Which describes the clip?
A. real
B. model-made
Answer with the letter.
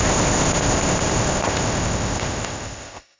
B